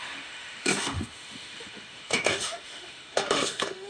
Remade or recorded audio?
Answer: remade